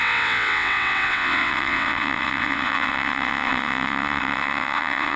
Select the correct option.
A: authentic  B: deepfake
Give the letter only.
B